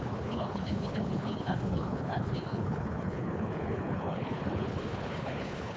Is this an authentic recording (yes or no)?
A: no